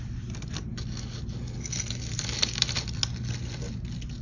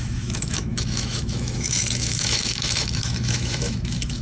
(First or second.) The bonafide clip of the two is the first